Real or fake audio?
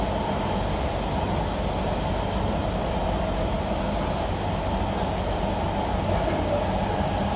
real